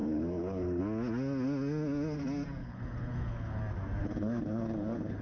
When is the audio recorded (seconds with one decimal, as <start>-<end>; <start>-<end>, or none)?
0.8-2.6; 3.6-4.0